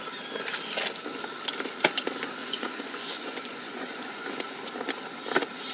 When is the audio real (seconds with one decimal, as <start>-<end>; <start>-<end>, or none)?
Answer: 0.0-2.4; 4.3-5.7

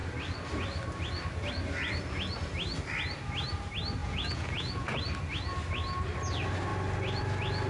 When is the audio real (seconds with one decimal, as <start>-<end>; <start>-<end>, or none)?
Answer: 0.0-4.0; 5.0-7.7